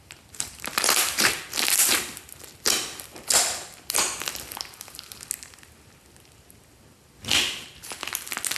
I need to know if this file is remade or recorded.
recorded